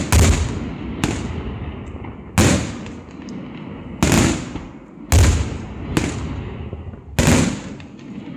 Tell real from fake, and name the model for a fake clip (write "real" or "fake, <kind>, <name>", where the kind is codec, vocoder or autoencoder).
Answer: real